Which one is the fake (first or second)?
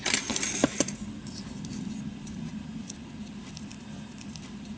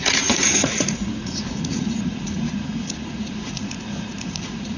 second